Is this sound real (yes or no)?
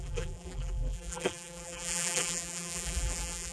no